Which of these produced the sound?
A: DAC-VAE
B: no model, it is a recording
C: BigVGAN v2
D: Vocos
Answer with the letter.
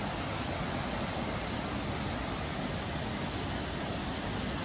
B